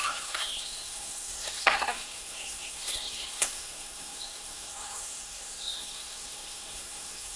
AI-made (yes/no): yes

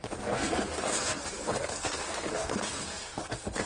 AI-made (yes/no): yes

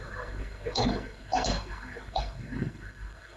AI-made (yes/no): yes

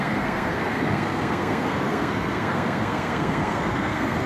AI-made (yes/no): yes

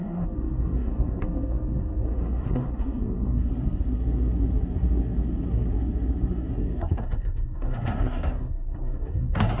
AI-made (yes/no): yes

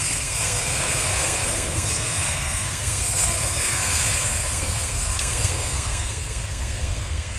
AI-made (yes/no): yes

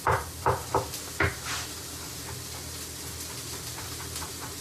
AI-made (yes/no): no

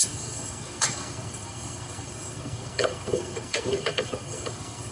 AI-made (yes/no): yes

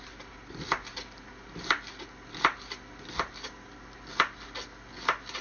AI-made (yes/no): no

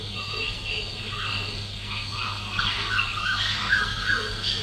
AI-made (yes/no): yes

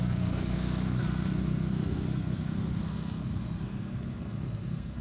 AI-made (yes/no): yes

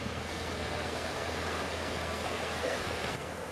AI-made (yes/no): yes